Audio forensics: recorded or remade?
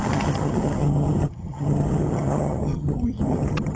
remade